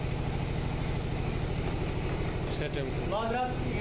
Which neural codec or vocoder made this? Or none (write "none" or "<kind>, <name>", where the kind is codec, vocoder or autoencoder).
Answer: none